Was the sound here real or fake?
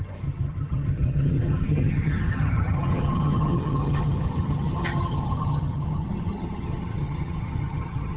fake